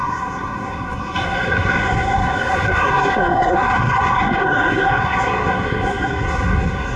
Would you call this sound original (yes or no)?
no